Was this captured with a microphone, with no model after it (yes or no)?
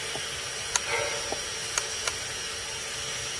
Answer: yes